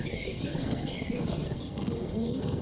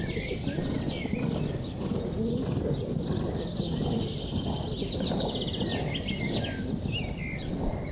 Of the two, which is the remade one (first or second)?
first